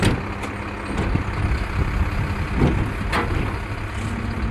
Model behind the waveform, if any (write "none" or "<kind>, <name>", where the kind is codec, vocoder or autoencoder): none